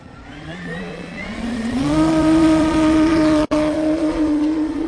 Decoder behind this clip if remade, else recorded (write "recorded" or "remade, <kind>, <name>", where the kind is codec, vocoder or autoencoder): remade, vocoder, Vocos